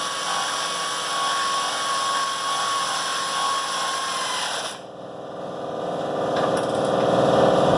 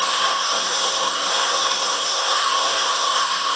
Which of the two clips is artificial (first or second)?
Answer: second